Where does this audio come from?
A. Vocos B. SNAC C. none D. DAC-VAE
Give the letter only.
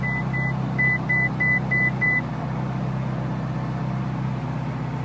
C